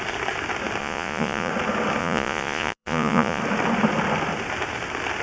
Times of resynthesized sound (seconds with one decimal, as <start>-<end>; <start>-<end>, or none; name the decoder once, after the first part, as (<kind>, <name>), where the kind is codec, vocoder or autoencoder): 0.8-1.5 (vocoder, Vocos); 2.0-3.4